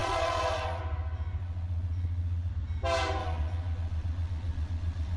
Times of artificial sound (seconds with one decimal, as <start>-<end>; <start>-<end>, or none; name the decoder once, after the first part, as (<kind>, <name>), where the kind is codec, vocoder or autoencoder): 0.0-0.8 (vocoder, Vocos); 1.4-2.5; 3.2-5.2